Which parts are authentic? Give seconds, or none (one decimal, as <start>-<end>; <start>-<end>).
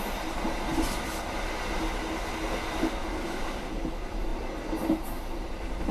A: 0.7-3.7